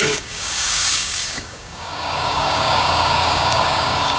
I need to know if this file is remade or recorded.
remade